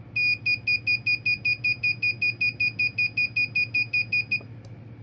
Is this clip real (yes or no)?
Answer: yes